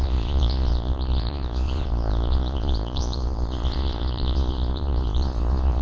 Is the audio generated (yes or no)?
yes